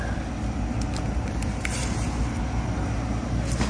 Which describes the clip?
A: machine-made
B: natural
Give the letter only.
B